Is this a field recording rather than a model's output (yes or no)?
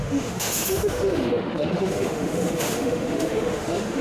no